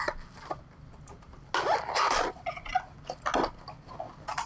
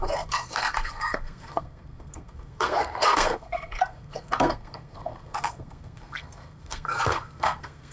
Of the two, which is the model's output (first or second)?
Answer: second